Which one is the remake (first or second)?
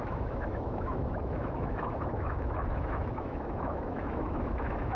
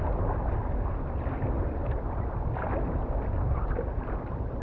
first